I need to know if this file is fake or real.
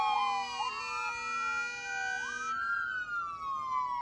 real